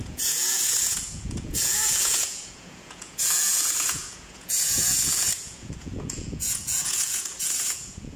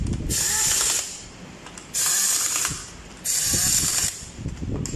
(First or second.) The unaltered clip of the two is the second